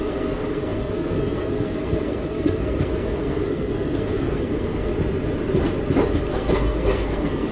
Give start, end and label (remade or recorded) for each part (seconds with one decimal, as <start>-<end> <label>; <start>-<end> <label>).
0.0-4.9 remade; 4.9-6.3 recorded; 6.3-7.5 remade